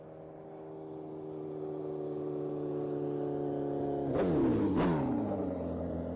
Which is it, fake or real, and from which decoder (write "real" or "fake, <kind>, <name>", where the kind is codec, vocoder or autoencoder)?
real